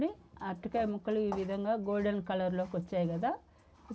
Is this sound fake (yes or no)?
no